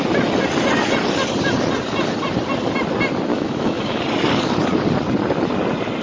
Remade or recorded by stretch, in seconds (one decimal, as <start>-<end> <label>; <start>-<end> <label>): 0.0-3.3 recorded; 3.3-4.0 remade; 4.0-6.0 recorded